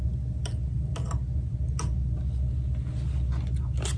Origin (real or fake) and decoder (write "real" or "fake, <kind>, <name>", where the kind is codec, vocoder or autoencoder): real